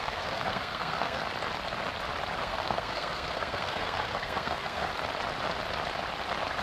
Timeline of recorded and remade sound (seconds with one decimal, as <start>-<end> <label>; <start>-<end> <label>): 0.0-1.2 remade; 1.2-2.4 recorded; 2.4-4.9 remade; 4.9-6.6 recorded